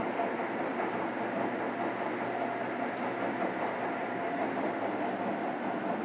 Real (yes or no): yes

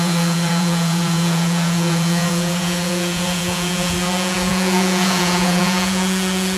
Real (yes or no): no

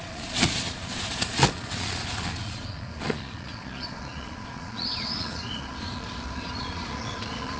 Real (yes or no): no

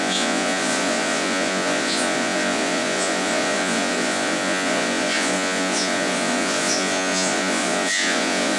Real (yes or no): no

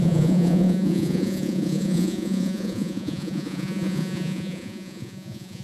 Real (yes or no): no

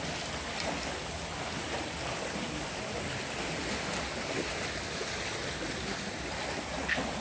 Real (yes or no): yes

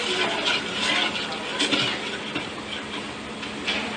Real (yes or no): yes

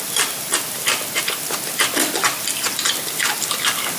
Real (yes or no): yes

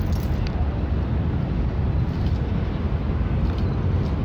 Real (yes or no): yes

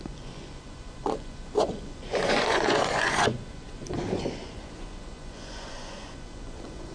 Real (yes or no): no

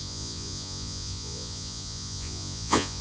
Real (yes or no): no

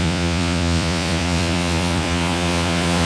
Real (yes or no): no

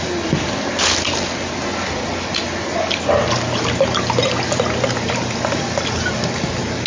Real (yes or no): yes